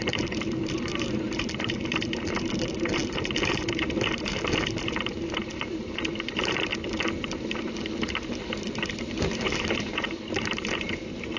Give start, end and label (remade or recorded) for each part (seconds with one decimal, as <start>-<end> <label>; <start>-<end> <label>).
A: 0.0-6.7 remade; 6.7-8.2 recorded; 8.2-11.4 remade